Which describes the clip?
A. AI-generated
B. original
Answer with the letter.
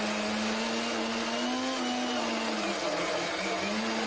B